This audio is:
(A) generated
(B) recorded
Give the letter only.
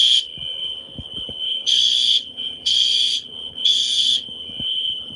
A